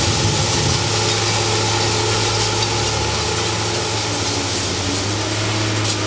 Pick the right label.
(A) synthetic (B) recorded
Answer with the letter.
B